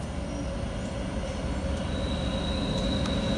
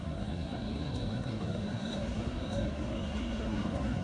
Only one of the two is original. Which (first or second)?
first